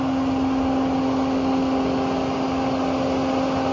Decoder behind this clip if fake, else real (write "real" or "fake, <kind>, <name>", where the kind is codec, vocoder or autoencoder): real